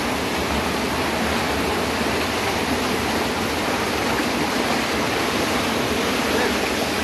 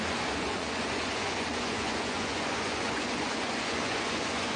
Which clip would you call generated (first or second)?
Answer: second